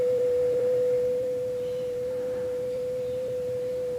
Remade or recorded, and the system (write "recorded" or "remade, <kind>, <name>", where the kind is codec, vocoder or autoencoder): remade, vocoder, BigVGAN v2